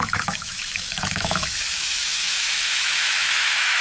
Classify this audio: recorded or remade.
remade